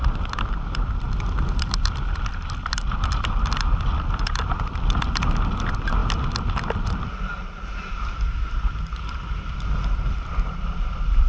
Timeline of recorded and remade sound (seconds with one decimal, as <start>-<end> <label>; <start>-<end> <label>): 0.0-11.3 recorded